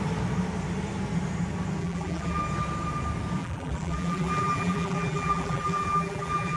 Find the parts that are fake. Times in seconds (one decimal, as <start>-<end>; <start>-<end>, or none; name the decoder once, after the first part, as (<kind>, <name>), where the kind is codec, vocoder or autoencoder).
1.8-2.4 (vocoder, BigVGAN v2); 3.4-6.6